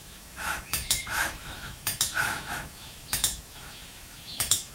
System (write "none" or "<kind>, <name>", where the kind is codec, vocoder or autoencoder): autoencoder, DAC-VAE